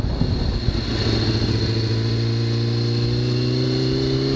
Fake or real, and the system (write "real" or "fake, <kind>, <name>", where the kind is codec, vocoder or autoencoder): real